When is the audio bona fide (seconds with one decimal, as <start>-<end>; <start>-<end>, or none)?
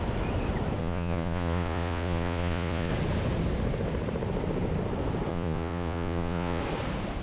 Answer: 0.0-0.8; 2.9-5.3; 6.6-7.2